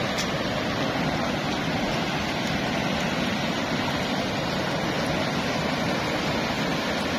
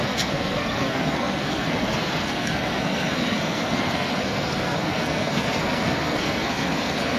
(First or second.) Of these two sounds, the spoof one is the second